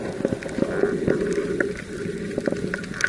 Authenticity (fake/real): real